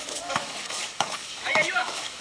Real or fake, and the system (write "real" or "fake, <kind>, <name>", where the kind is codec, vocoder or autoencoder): fake, codec, DAC